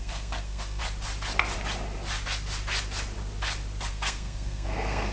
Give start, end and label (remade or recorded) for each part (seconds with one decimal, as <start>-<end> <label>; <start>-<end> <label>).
0.0-0.8 remade; 0.8-3.9 recorded; 3.9-5.1 remade